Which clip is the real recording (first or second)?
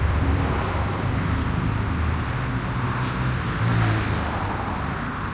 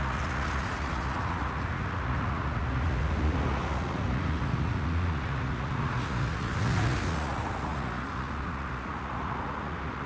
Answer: first